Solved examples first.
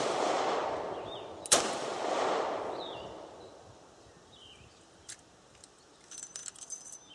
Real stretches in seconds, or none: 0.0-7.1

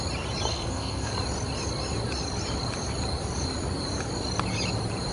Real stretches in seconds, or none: 0.0-0.5; 1.1-5.1

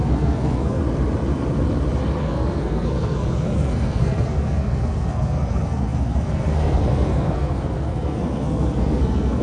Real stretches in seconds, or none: 0.8-2.2

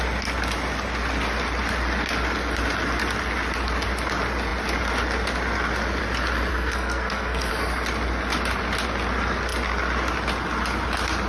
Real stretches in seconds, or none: 0.0-6.5; 7.5-11.3